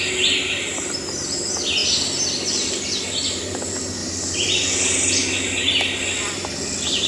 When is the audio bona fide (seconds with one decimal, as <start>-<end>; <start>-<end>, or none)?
0.0-4.0; 4.6-7.1